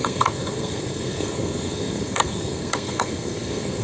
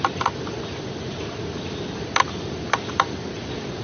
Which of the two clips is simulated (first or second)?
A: first